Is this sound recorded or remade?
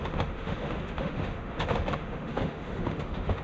remade